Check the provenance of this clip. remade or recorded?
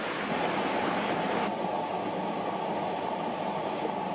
recorded